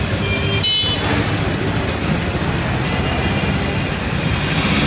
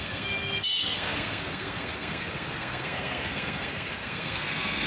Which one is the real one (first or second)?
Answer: first